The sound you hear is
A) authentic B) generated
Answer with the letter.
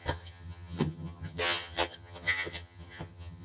B